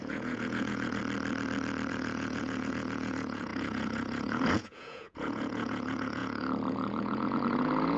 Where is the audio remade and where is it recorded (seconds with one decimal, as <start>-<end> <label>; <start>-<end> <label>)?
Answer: 0.0-1.0 remade; 1.0-1.9 recorded; 1.9-8.0 remade